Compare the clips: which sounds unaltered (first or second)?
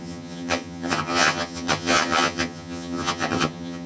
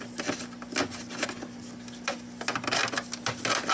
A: second